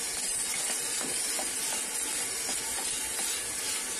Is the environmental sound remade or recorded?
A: recorded